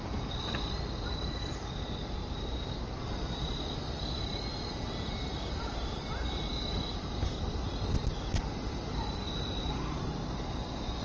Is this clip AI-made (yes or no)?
yes